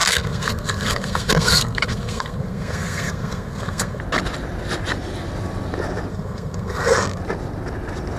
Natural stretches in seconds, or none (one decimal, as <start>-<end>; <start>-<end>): 4.0-6.1; 7.2-8.2